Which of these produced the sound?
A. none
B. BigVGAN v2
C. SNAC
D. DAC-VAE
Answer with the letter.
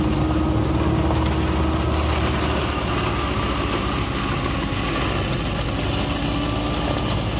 A